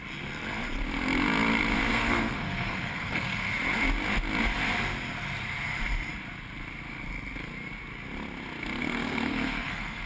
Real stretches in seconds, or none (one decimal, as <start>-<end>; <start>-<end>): 0.0-1.9; 3.5-8.8